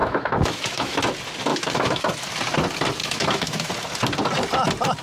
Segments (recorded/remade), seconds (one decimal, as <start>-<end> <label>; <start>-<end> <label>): 0.0-1.0 remade; 1.0-1.5 recorded; 1.5-2.0 remade; 2.0-3.0 recorded; 3.0-3.7 remade; 3.7-5.0 recorded